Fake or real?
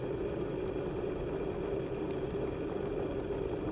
real